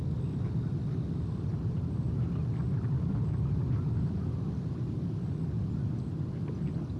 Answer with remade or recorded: recorded